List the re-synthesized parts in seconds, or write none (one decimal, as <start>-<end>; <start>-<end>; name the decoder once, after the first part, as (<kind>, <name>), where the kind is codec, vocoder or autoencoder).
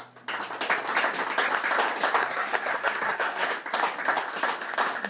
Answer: 2.2-3.5 (codec, SNAC)